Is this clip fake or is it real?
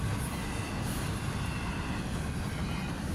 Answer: real